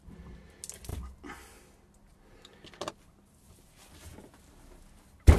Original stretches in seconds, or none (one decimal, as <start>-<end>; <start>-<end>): 0.0-5.4